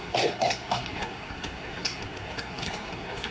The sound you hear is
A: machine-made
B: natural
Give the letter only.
A